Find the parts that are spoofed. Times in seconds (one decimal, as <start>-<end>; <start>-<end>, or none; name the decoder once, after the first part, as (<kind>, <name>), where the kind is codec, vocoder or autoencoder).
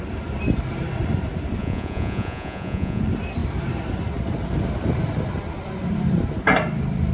1.6-3.0 (vocoder, Vocos)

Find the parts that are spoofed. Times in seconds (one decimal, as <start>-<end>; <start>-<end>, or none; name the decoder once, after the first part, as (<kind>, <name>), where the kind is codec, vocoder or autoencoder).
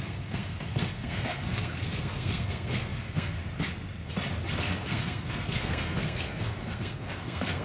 0.0-3.4 (codec, SNAC); 4.6-7.6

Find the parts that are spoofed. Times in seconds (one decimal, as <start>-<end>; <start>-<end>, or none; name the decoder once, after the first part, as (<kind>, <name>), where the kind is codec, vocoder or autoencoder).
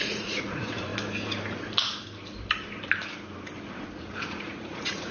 0.0-0.9 (vocoder, Vocos); 4.0-5.1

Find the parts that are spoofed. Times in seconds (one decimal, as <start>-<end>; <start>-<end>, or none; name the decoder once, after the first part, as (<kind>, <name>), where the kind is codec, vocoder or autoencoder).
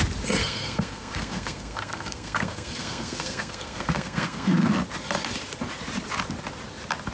0.4-4.7 (codec, SNAC)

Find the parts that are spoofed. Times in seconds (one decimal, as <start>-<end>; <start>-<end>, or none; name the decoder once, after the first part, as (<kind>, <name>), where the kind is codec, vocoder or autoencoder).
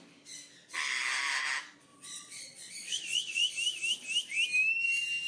1.9-3.5 (vocoder, Vocos)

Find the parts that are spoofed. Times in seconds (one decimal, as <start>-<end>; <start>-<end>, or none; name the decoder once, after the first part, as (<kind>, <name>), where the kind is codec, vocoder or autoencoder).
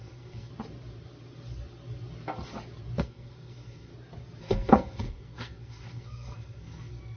0.0-0.5 (codec, SNAC); 3.0-3.9; 4.4-7.2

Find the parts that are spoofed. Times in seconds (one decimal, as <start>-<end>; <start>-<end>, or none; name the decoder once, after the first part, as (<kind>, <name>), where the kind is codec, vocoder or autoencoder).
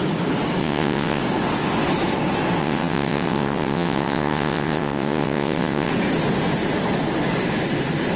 0.6-1.2 (vocoder, WaveNeXt); 2.6-5.9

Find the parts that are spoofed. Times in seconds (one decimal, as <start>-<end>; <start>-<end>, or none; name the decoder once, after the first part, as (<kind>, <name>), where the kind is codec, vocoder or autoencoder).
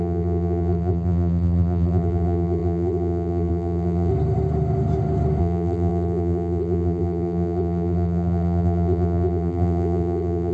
0.0-4.1 (vocoder, BigVGAN v2); 5.4-10.5